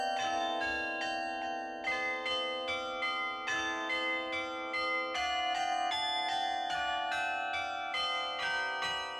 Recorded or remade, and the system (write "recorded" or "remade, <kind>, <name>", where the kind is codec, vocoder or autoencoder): recorded